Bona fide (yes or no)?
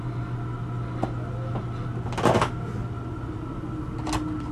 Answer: yes